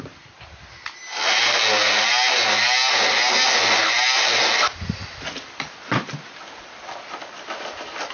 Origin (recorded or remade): recorded